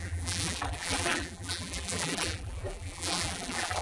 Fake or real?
fake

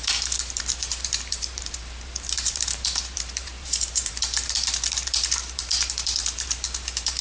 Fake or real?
fake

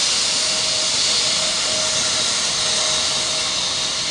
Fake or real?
real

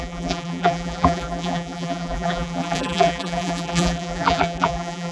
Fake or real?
fake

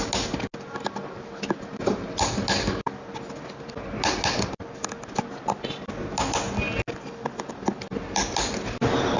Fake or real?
real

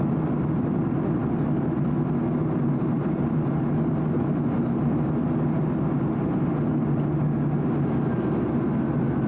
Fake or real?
real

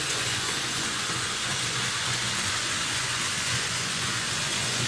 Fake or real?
fake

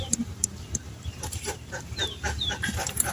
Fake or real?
fake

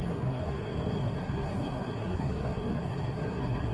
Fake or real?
fake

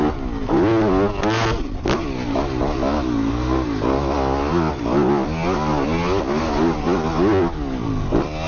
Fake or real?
real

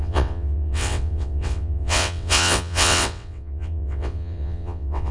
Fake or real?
fake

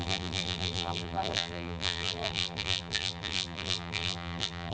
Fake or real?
fake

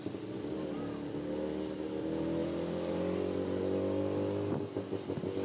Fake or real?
real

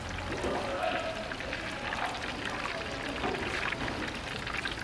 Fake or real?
real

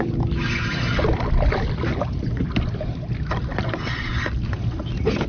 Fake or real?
real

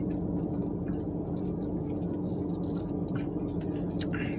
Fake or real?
real